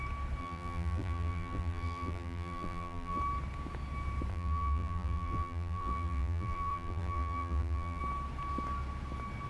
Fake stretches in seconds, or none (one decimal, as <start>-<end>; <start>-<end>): 0.4-3.2; 4.3-8.0